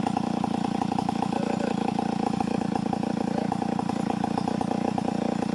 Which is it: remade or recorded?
recorded